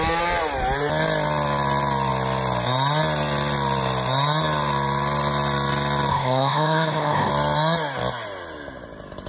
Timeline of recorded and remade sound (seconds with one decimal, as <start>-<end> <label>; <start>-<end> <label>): 0.0-6.1 recorded; 6.1-7.3 remade; 7.3-9.3 recorded